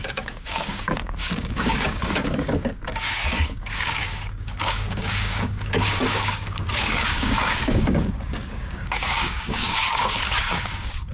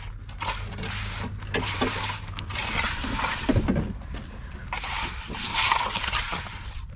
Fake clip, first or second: first